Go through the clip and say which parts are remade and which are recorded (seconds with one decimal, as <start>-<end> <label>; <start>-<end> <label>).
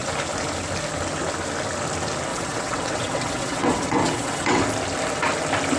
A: 0.0-2.3 recorded; 2.3-4.6 remade; 4.6-5.8 recorded